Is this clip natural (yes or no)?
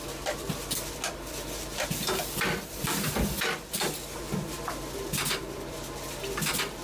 no